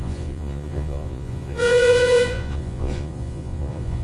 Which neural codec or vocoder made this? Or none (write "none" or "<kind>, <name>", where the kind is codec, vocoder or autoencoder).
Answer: vocoder, Vocos